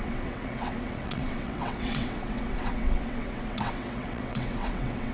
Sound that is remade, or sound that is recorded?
remade